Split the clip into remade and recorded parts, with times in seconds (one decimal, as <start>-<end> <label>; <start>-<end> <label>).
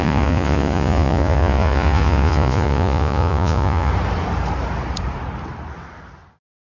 0.0-3.9 remade; 3.9-6.8 recorded